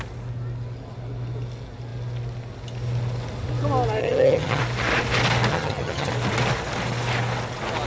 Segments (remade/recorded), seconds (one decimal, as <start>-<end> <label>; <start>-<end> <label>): 0.0-4.0 recorded; 4.0-4.6 remade; 4.6-5.5 recorded; 5.5-6.1 remade; 6.1-7.9 recorded